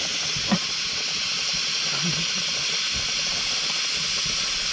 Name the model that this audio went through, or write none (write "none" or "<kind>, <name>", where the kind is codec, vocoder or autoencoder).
none